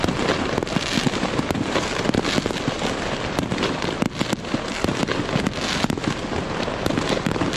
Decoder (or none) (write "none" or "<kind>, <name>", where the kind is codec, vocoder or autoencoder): none